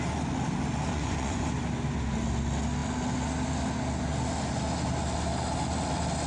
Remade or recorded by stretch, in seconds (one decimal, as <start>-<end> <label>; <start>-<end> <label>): 0.0-0.9 recorded; 0.9-1.5 remade; 1.5-6.3 recorded